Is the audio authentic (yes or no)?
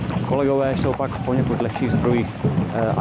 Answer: yes